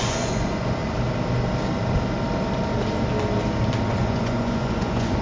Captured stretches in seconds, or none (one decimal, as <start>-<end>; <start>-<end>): 0.8-3.9

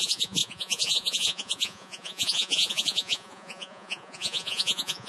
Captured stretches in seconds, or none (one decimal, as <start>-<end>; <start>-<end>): none

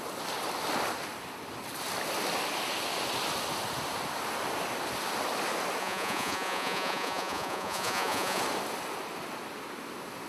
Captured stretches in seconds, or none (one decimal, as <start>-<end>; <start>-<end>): 0.0-5.8; 8.4-10.3

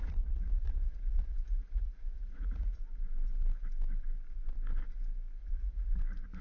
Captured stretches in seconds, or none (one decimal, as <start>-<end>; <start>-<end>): 2.8-5.4; 6.0-6.4

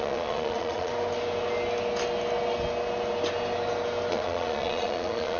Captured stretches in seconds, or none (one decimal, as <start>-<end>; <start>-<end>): 0.9-4.1

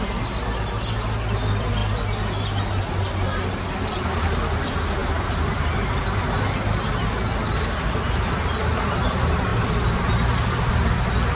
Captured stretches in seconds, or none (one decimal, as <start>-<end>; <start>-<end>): 0.0-11.3